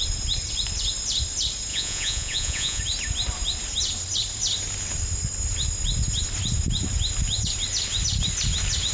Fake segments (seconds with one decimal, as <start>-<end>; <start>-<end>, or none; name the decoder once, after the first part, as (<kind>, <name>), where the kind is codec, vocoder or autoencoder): 1.7-2.8 (vocoder, Vocos)

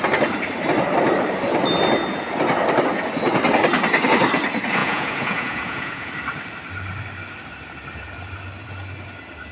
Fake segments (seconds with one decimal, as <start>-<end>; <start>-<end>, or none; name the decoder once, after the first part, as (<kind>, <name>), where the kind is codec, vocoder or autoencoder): 4.8-6.1 (vocoder, Vocos)

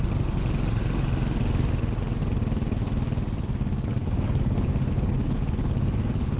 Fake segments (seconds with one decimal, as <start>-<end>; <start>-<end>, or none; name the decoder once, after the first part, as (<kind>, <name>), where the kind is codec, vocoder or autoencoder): 3.9-4.9 (codec, DAC); 5.6-6.4

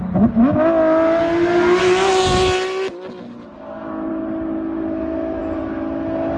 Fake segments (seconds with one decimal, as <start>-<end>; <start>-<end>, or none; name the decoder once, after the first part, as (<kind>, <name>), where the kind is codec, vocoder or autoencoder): none

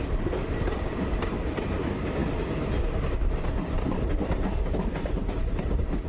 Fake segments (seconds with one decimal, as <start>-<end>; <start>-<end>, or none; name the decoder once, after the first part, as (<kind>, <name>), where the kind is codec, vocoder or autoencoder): 2.2-4.8 (vocoder, BigVGAN v2)

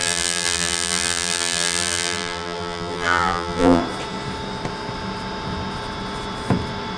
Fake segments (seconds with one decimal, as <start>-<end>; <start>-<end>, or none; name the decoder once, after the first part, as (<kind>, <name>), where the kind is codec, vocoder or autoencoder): 0.0-3.8 (vocoder, BigVGAN v2)

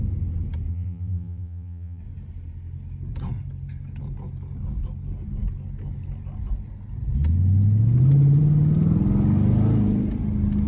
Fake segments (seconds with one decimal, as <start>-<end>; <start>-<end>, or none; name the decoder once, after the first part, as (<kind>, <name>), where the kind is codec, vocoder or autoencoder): 0.7-2.0 (vocoder, BigVGAN v2)